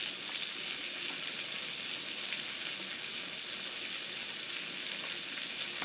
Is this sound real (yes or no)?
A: yes